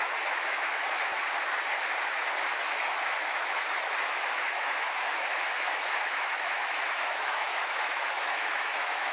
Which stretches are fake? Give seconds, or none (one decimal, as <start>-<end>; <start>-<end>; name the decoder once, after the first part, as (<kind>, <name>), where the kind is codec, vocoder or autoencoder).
0.0-1.1 (autoencoder, DAC-VAE); 2.4-9.1

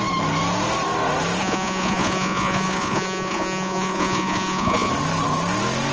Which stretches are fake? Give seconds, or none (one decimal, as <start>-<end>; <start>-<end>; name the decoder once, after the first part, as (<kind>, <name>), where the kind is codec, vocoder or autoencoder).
1.4-4.9 (vocoder, Vocos)

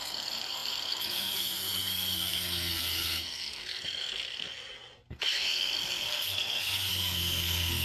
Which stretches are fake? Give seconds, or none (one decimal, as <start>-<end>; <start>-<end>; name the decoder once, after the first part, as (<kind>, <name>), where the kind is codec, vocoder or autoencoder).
0.0-4.6 (codec, SNAC); 5.1-7.8

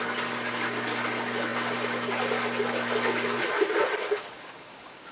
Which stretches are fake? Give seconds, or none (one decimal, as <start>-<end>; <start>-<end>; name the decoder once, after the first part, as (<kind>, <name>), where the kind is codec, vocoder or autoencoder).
4.0-5.1 (codec, DAC)

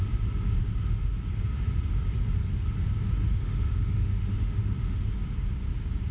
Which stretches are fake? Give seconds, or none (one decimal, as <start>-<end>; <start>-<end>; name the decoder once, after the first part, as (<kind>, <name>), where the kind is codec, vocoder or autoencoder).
0.6-1.1 (autoencoder, DAC-VAE); 3.2-5.0

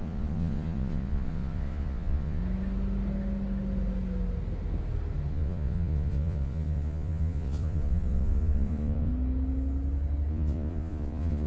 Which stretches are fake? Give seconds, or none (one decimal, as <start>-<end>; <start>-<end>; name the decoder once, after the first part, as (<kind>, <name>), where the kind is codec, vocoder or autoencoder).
0.0-2.4 (vocoder, Vocos); 5.3-9.1; 10.3-11.5

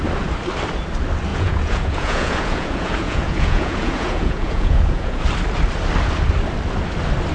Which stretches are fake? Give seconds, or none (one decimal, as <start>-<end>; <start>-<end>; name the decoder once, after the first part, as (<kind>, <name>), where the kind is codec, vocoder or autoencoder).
1.3-5.2 (vocoder, Vocos)